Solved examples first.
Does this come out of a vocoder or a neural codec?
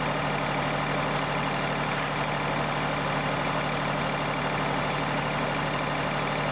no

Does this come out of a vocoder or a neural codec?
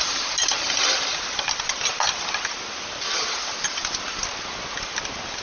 no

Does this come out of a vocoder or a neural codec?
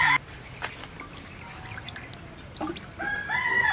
no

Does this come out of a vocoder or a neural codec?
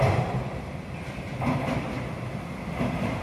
no